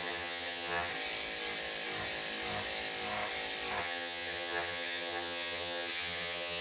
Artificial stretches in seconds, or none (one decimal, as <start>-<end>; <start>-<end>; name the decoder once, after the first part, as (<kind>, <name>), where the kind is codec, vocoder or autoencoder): 0.0-0.9 (vocoder, HiFi-GAN); 3.8-6.6